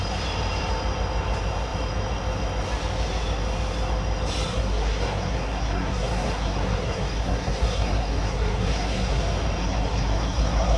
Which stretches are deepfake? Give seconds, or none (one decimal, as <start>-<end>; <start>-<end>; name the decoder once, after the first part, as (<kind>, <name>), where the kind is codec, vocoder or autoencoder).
4.5-9.2 (codec, SNAC); 9.6-10.8